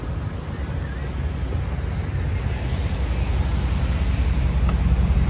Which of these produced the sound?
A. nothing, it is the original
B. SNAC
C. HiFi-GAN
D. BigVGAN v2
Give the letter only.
A